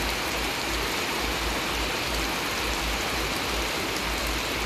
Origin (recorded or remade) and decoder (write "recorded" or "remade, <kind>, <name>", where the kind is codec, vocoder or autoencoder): recorded